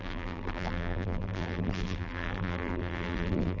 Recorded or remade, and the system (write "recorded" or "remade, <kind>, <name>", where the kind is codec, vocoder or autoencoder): remade, vocoder, BigVGAN v2